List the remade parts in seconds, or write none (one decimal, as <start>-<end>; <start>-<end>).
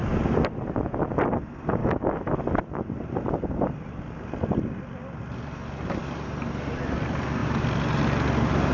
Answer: 1.8-2.3